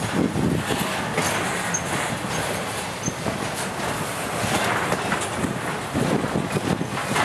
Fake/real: real